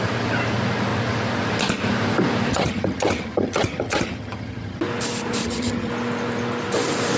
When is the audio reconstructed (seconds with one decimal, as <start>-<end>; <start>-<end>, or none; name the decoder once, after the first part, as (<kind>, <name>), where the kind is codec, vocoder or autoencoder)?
2.5-4.8 (vocoder, HiFi-GAN); 5.4-5.9